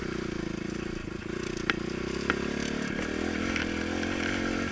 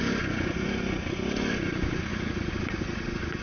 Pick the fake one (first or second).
second